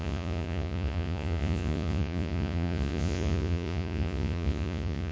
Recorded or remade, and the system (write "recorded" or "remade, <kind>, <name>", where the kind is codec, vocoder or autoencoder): remade, vocoder, Vocos